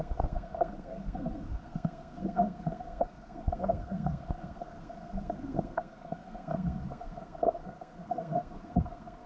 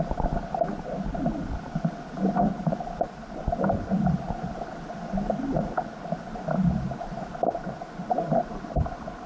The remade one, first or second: first